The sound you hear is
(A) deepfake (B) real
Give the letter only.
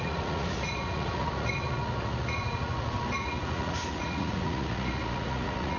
A